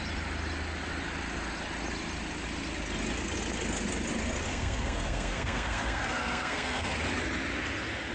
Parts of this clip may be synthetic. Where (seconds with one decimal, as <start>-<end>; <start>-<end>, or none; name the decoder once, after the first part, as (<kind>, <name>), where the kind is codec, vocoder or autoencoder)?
4.5-6.9 (codec, SNAC)